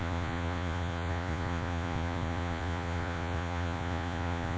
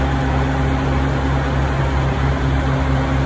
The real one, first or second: second